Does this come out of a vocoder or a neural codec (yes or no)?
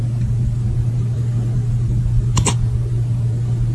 no